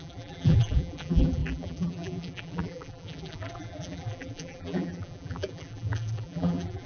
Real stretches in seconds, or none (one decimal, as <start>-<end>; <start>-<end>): none